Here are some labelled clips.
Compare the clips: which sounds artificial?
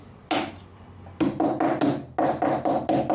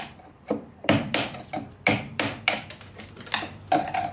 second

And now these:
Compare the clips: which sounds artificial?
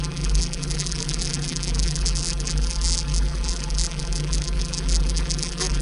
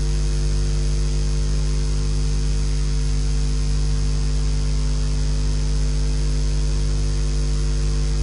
first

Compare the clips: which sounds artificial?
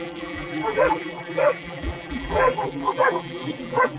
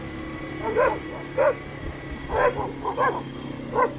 first